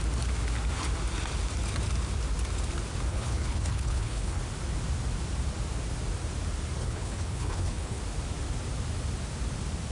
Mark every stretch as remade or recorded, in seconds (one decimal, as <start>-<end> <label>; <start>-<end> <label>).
0.0-3.1 recorded; 3.1-4.4 remade; 4.4-6.8 recorded; 6.8-8.0 remade; 8.0-9.9 recorded